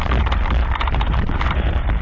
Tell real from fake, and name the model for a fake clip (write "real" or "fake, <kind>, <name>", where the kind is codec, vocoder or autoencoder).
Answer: fake, vocoder, BigVGAN v2